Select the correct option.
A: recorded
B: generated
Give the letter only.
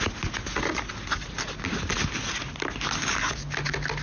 A